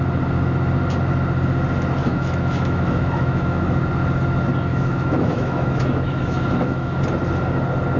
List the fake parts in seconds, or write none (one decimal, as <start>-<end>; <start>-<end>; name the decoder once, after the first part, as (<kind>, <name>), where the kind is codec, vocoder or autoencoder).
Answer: 2.0-3.8 (autoencoder, DAC-VAE); 4.7-7.0